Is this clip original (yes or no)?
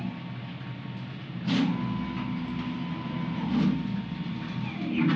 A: yes